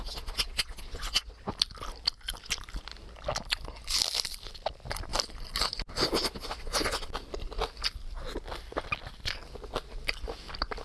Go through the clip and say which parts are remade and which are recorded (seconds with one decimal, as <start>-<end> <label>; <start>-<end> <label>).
0.0-10.8 recorded